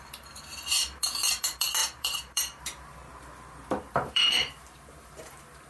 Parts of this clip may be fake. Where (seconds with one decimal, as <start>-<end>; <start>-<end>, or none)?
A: 0.0-3.0; 3.8-5.7